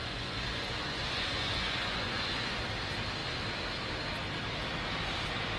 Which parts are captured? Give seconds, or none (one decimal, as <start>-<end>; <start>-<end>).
2.6-5.6